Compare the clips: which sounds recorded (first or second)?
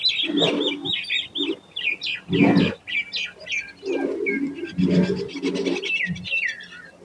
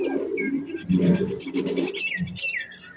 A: first